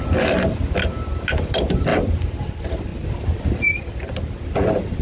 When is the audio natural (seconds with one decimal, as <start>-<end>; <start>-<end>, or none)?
0.6-1.9; 2.4-5.0